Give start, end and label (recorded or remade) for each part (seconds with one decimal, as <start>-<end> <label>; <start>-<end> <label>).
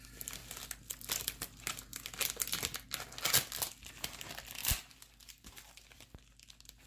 0.0-6.9 recorded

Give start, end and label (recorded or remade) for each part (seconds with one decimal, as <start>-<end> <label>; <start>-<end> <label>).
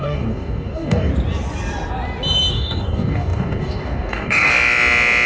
0.0-1.1 remade; 1.1-2.5 recorded; 2.5-4.5 remade; 4.5-5.3 recorded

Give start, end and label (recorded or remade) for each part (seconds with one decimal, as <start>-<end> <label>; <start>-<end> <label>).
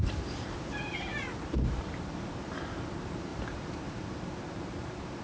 0.0-3.3 remade; 3.3-4.0 recorded; 4.0-5.2 remade